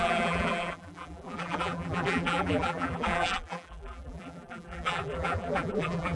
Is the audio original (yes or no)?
no